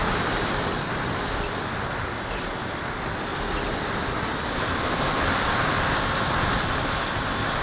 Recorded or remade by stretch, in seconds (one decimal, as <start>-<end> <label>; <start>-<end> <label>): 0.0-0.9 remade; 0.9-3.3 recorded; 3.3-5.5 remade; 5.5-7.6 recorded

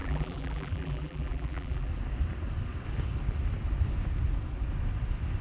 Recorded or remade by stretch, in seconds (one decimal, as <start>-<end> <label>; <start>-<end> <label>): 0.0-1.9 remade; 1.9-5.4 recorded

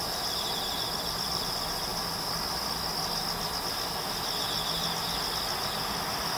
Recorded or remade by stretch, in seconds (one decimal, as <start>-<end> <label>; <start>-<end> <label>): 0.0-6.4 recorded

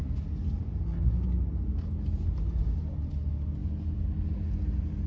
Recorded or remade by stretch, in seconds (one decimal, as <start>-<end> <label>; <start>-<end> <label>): 0.0-5.1 recorded